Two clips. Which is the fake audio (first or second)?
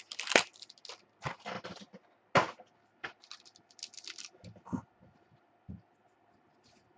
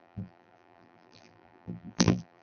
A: second